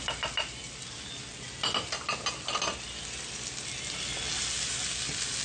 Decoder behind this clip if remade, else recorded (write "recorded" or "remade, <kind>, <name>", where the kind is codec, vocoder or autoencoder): recorded